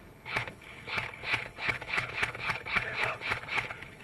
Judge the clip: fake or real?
fake